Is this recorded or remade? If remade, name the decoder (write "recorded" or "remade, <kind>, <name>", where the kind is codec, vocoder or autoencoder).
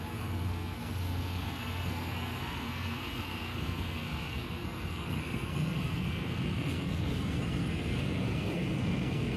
remade, codec, SNAC